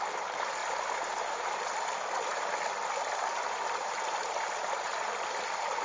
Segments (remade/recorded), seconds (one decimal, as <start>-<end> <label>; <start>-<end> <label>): 0.0-5.8 recorded